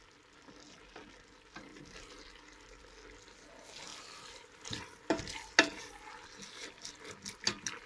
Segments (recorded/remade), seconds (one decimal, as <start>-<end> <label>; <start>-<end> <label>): 0.0-7.9 recorded